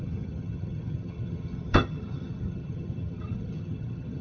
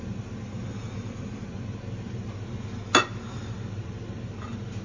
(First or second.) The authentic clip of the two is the second